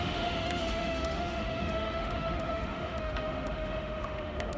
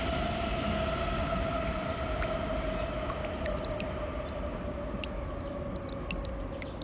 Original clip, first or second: second